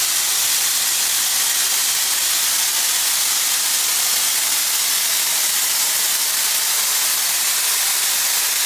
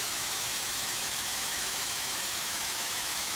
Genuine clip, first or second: first